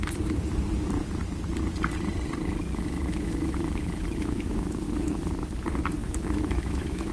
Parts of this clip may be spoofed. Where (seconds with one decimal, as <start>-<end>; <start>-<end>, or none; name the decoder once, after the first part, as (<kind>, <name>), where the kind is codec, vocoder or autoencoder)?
2.7-5.3 (autoencoder, DAC-VAE); 6.0-7.1